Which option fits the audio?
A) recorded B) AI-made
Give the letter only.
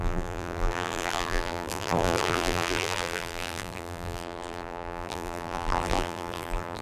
B